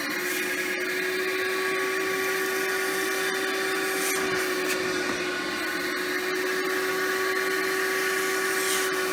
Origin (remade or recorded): recorded